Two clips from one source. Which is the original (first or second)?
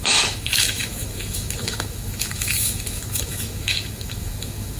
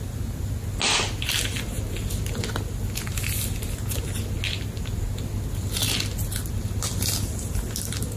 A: second